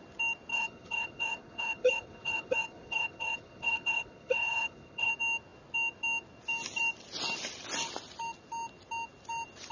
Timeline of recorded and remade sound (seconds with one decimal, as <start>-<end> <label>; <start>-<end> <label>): 0.0-0.5 recorded; 0.5-5.1 remade; 5.1-9.7 recorded